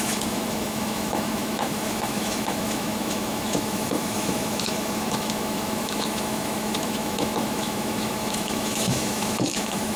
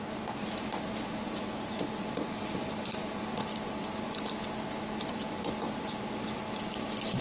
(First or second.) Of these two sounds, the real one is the second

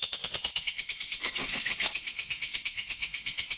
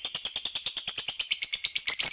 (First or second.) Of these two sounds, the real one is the second